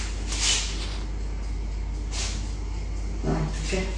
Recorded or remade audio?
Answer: recorded